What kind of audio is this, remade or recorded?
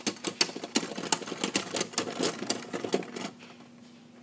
recorded